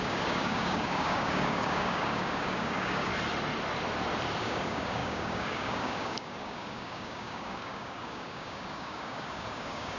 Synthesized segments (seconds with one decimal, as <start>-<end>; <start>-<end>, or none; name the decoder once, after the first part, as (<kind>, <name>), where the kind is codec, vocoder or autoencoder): 0.0-3.1 (codec, DAC); 4.4-10.0

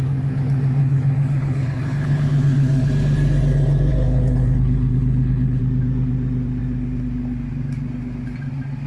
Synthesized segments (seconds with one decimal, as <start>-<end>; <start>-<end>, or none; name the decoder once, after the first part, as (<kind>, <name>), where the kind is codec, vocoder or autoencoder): 0.8-2.9 (codec, HILCodec); 3.9-5.6

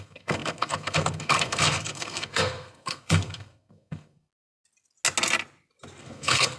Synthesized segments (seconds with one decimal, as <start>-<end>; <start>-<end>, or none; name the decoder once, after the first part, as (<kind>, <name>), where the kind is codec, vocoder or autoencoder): 0.0-4.3 (codec, SNAC); 6.0-6.6

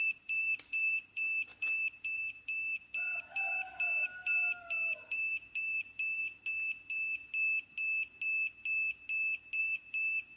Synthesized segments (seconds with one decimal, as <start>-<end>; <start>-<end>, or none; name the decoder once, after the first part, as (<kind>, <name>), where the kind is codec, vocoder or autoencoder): 0.0-6.2 (vocoder, BigVGAN v2); 9.6-10.4

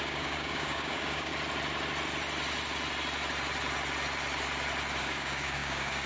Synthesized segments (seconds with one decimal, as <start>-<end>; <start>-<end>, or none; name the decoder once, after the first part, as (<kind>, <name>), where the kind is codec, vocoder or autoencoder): 0.0-1.3 (codec, DAC); 5.0-6.1

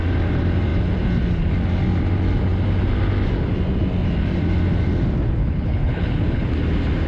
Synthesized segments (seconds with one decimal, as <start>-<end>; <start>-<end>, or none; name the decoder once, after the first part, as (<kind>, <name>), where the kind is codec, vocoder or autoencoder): 5.4-6.5 (codec, HILCodec)